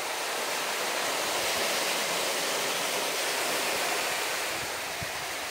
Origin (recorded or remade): recorded